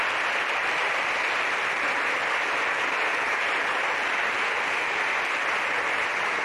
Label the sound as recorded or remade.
recorded